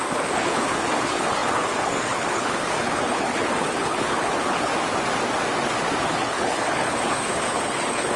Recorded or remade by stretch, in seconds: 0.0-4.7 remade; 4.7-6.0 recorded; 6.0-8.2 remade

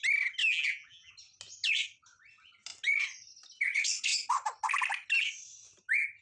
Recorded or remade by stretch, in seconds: 0.0-0.4 recorded; 0.4-1.1 remade; 1.1-6.2 recorded

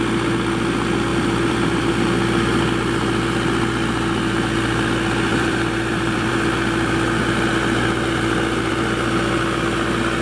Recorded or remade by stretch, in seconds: 0.0-1.1 recorded; 1.1-1.9 remade; 1.9-5.3 recorded; 5.3-6.3 remade; 6.3-10.2 recorded

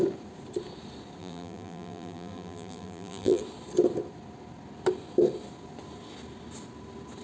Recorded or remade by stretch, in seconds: 0.0-1.2 recorded; 1.2-3.4 remade; 3.4-7.2 recorded

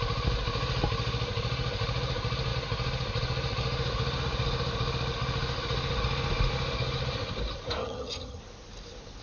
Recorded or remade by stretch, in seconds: 0.0-7.8 recorded; 7.8-8.4 remade; 8.4-9.2 recorded

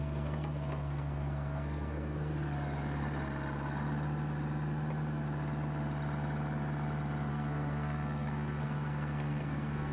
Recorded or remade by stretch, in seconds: 0.0-2.3 remade; 2.3-7.3 recorded; 7.3-9.9 remade

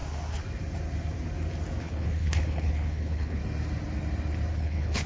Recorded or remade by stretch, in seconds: 0.0-1.8 recorded; 1.8-3.4 remade; 3.4-4.5 recorded; 4.5-5.1 remade